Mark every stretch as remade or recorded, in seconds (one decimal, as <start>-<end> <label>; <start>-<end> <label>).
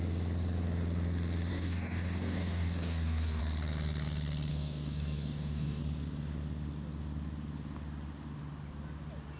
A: 0.0-1.5 recorded; 1.5-3.4 remade; 3.4-4.5 recorded; 4.5-5.8 remade; 5.8-9.4 recorded